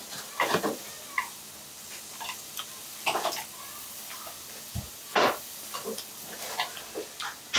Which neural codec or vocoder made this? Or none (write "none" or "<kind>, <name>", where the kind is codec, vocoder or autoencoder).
none